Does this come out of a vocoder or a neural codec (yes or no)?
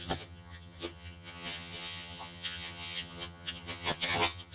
yes